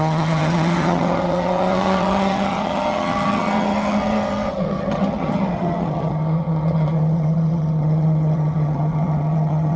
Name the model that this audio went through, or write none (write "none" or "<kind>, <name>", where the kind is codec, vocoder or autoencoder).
vocoder, HiFi-GAN